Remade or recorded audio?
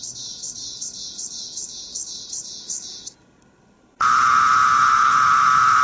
recorded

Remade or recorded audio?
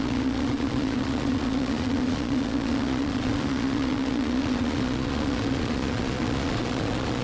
remade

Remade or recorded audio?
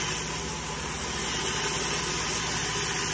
recorded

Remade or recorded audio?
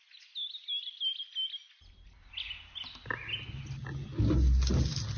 recorded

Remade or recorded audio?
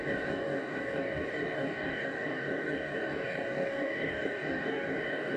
remade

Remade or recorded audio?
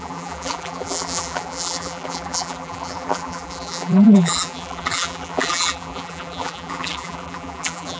remade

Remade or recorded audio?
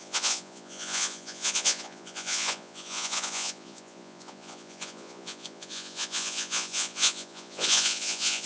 remade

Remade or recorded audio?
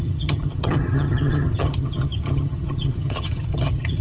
remade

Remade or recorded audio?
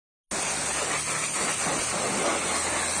recorded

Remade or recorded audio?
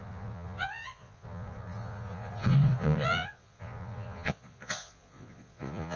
remade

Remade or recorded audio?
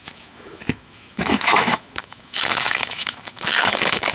remade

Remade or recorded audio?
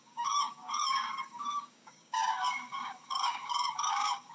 remade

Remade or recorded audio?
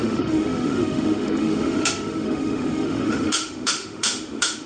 remade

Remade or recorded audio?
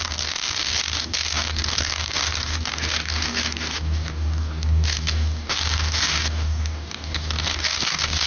remade